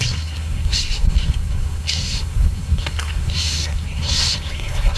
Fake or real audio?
fake